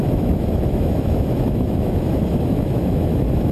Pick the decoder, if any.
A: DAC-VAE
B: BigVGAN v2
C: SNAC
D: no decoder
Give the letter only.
A